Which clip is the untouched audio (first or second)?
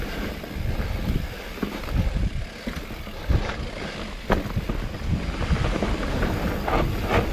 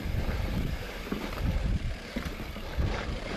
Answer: first